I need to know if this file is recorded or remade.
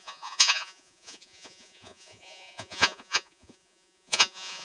remade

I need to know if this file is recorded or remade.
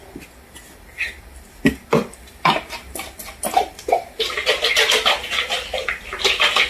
recorded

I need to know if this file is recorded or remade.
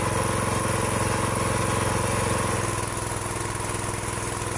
recorded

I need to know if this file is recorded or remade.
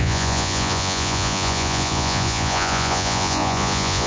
remade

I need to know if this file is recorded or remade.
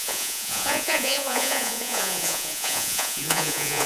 remade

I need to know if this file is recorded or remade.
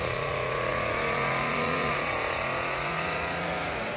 remade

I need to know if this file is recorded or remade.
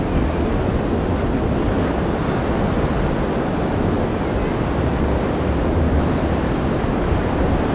recorded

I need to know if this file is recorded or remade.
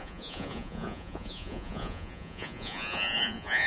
remade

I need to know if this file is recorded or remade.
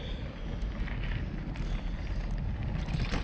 recorded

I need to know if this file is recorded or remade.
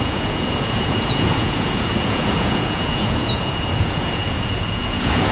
remade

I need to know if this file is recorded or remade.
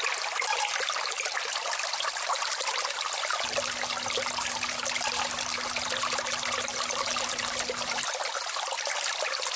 recorded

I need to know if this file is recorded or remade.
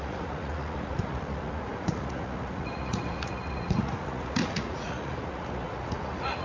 remade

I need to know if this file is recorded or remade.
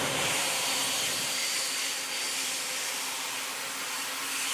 recorded